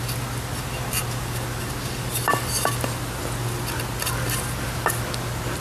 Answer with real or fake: real